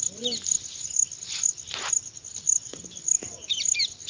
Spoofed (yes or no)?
no